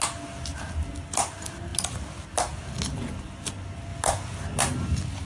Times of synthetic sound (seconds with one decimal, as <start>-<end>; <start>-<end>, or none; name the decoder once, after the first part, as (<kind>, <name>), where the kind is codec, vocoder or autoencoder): none